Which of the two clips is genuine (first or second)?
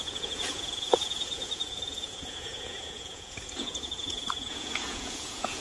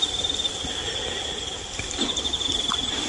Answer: second